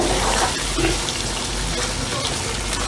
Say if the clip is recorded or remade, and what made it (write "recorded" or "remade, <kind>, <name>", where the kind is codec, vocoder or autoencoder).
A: recorded